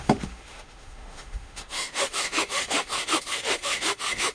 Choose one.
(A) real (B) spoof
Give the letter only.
B